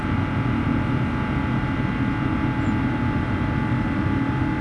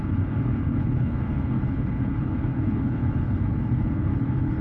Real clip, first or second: first